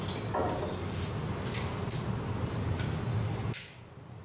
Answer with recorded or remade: recorded